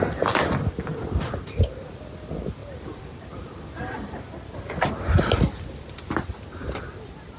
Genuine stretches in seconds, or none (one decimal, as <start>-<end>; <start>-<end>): 0.0-0.9; 1.8-2.6; 6.5-7.4